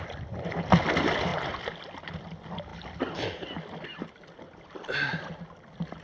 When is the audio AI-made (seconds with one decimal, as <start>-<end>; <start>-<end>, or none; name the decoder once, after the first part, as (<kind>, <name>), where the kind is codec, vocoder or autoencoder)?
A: none